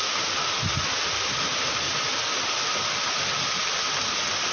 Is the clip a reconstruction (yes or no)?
no